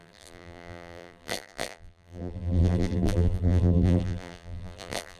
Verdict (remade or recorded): remade